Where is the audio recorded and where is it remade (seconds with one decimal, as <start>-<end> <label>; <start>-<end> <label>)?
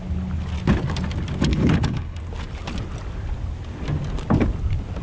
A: 0.0-1.5 recorded; 1.5-2.2 remade; 2.2-5.0 recorded